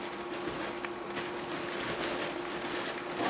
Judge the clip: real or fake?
real